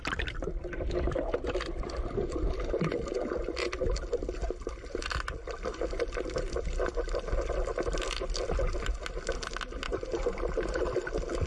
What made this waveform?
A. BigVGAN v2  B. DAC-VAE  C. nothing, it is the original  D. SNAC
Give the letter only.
C